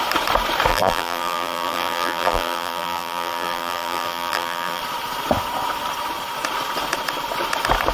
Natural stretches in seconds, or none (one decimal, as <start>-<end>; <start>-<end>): 0.0-0.7; 4.8-7.9